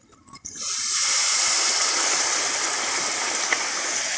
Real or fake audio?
real